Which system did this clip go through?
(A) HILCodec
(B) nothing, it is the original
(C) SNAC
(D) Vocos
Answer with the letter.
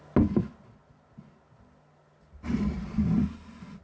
B